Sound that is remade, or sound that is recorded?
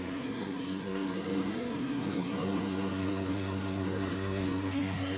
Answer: remade